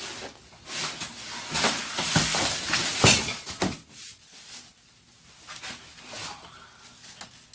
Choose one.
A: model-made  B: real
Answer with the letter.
B